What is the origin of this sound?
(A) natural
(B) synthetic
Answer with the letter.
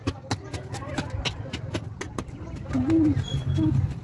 A